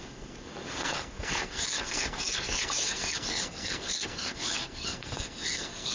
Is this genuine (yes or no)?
no